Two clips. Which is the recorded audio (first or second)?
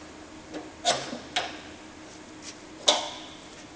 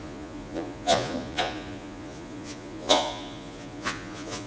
first